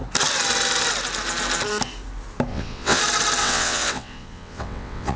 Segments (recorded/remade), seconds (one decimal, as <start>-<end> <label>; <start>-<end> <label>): 0.0-2.5 recorded; 2.5-3.0 remade; 3.0-3.4 recorded; 3.4-5.2 remade